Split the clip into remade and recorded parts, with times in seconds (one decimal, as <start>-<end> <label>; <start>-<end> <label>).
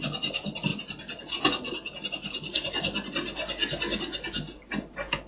0.0-5.3 recorded